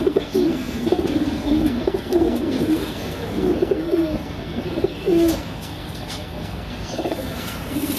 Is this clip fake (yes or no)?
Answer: yes